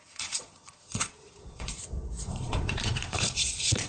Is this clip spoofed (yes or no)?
yes